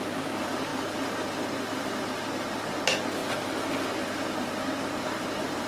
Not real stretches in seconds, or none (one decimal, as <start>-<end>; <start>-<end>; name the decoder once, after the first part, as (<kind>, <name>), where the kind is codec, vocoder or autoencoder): 0.0-3.2 (vocoder, BigVGAN v2); 4.9-5.7